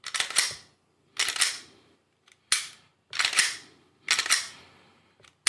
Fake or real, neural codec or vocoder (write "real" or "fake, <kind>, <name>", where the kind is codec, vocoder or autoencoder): real